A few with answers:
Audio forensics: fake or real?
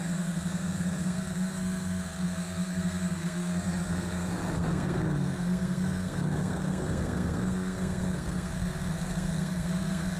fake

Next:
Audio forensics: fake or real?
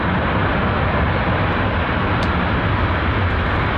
real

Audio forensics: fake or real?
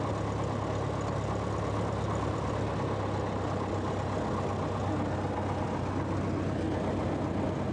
real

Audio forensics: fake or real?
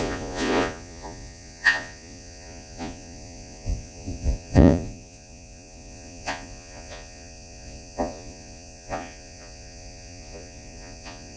fake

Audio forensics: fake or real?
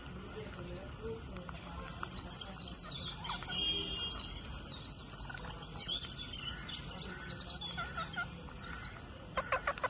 real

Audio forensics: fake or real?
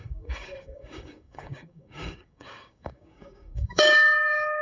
fake